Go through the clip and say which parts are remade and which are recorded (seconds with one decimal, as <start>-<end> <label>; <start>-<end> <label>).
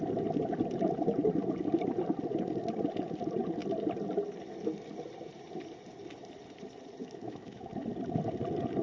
0.0-7.0 recorded; 7.0-7.7 remade; 7.7-8.8 recorded